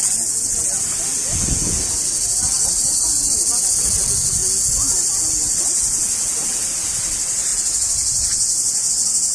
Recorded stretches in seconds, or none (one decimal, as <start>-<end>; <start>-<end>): 0.0-9.3

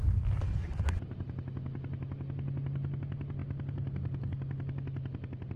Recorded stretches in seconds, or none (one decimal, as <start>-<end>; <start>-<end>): 0.0-5.6

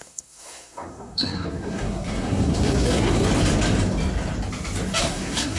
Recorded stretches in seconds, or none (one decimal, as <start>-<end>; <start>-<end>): 3.3-5.0

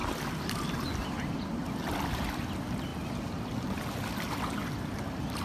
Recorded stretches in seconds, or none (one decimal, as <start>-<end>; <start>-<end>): 0.0-5.4

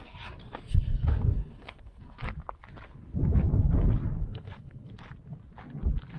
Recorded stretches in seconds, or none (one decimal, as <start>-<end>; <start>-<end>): 0.0-0.4; 2.0-4.2; 4.9-6.2

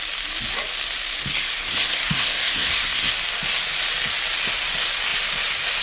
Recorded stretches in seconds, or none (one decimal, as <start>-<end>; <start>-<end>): 0.0-1.2; 3.1-5.8